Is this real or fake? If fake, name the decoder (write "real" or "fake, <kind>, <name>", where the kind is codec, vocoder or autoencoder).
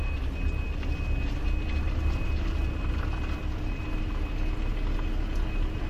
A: real